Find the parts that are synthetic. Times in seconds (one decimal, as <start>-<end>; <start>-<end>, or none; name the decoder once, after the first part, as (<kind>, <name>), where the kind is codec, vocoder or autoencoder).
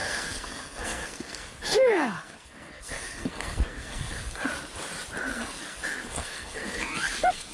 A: 0.0-4.5 (codec, SNAC); 5.3-7.5